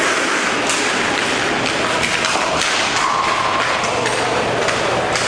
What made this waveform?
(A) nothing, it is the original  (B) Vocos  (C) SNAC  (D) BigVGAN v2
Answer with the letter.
A